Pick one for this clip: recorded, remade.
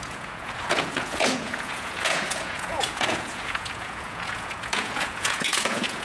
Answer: remade